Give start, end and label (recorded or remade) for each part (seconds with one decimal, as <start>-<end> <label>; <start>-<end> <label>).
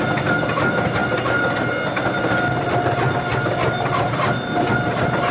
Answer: 0.0-5.3 recorded